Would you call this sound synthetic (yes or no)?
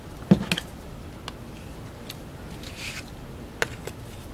no